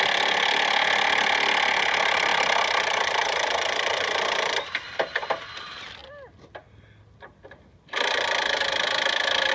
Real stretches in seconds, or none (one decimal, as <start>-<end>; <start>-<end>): 0.0-2.3; 5.3-9.5